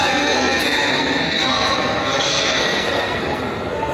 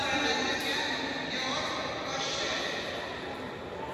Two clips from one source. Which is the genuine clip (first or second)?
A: second